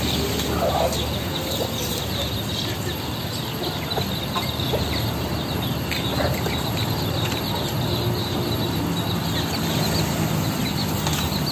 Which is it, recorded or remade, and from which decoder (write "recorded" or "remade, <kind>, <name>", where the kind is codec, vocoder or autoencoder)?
recorded